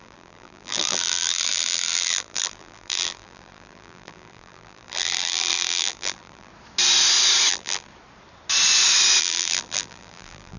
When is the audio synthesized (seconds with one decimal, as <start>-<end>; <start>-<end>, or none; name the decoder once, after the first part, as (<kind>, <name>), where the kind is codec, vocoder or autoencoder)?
0.0-6.5 (vocoder, BigVGAN v2); 7.5-7.9; 9.2-10.6